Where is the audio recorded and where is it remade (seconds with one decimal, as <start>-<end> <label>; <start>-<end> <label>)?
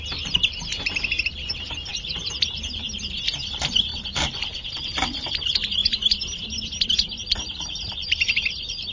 0.0-5.8 remade; 5.8-7.2 recorded; 7.2-8.9 remade